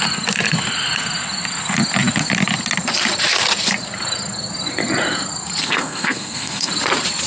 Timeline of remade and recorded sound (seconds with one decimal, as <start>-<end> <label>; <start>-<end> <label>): 0.0-5.6 recorded; 5.6-6.7 remade; 6.7-7.3 recorded